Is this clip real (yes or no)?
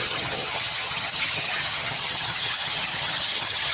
no